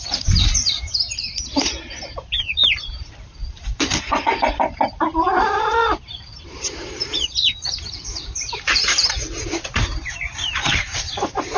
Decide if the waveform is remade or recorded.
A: remade